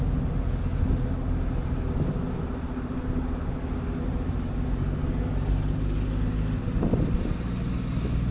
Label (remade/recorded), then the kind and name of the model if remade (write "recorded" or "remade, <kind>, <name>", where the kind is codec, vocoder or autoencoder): recorded